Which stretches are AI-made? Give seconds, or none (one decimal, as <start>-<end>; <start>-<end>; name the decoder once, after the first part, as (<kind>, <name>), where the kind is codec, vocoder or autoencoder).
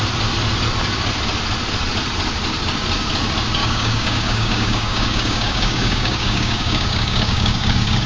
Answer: 3.6-8.1 (codec, DAC)